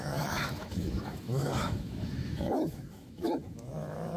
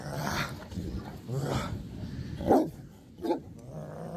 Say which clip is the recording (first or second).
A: second